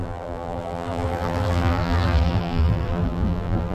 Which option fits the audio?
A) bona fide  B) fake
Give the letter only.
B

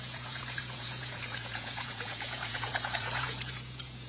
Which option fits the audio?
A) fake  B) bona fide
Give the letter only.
A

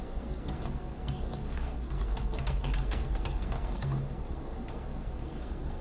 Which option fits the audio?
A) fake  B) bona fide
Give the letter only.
A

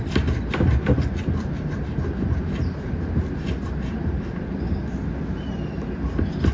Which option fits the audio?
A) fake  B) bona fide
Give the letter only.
B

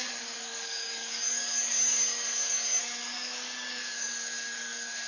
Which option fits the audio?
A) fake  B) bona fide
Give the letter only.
A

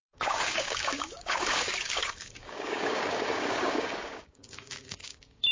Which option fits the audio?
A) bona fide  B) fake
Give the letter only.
B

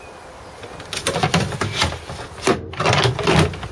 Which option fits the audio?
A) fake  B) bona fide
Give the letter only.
B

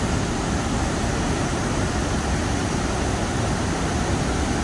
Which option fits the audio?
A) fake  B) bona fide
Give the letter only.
B